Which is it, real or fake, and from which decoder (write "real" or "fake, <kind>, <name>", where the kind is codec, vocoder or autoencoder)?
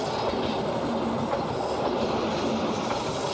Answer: real